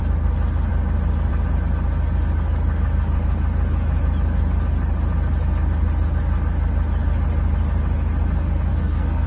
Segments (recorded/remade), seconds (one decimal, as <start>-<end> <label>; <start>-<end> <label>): 0.0-8.7 recorded; 8.7-9.3 remade